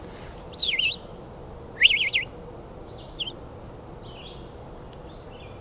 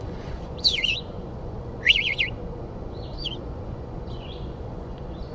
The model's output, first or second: second